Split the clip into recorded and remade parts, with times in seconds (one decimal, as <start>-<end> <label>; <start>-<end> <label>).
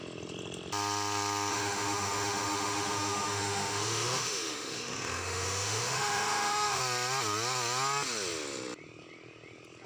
0.0-1.5 recorded; 1.5-6.8 remade; 6.8-9.9 recorded